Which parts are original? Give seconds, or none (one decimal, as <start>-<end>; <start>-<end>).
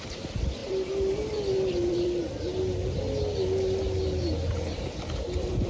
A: 2.5-5.0